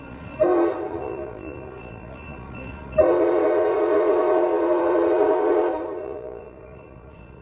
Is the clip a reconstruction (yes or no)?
yes